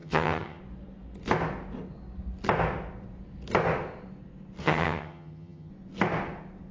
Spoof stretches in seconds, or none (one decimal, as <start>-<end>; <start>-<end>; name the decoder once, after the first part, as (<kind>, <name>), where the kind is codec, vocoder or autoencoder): 0.0-0.6 (vocoder, HiFi-GAN); 4.6-5.7